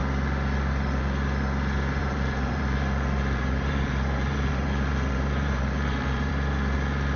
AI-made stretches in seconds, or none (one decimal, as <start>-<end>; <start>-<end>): 2.0-6.3